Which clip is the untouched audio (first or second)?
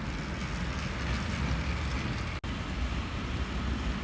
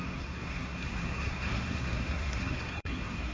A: first